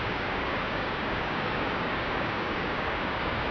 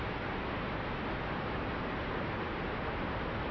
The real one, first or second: second